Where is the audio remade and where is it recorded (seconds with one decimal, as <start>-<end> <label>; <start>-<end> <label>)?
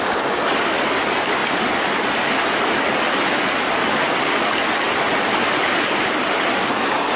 0.0-7.2 recorded